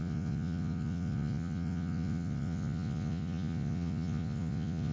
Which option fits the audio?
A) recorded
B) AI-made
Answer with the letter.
B